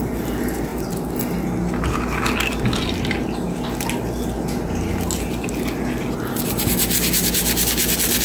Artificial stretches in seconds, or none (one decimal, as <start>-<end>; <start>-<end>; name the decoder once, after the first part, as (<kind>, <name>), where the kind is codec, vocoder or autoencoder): none